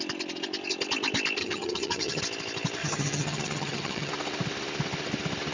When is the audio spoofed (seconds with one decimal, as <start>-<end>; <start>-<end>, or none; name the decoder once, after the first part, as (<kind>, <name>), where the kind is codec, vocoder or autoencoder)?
1.4-2.2 (vocoder, HiFi-GAN); 2.8-4.1